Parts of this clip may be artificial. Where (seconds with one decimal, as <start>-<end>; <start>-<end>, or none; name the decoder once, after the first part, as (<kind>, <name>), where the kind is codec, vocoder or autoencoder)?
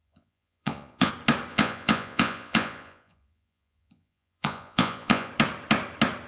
0.0-1.1 (vocoder, Vocos); 1.5-5.3